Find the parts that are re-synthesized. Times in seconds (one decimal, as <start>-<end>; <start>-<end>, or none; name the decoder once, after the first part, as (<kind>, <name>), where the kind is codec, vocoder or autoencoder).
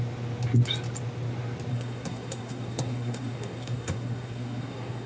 1.7-5.1 (codec, SNAC)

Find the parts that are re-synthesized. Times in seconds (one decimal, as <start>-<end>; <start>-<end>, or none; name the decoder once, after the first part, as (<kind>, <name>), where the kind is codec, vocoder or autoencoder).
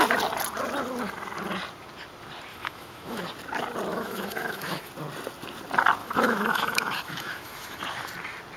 2.5-3.2 (autoencoder, DAC-VAE); 3.9-4.9; 6.0-7.8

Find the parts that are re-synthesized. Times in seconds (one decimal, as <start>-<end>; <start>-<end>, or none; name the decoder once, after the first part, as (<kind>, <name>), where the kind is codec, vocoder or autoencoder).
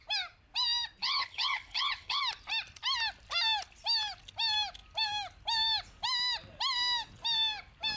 1.0-2.2 (codec, HILCodec)